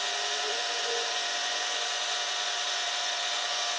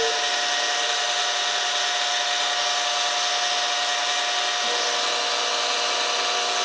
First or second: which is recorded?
second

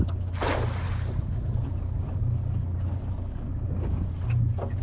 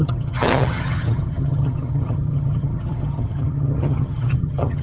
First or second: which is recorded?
first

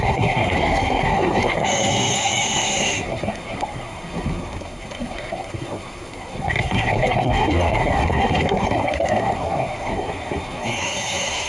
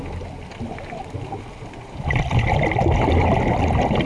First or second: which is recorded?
second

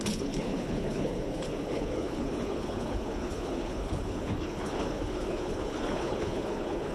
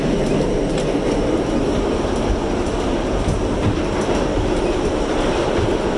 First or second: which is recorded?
second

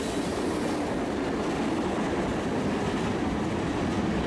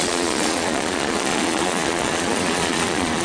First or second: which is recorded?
first